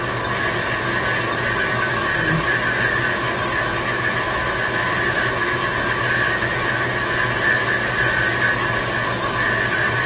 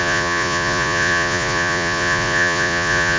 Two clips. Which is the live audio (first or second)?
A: first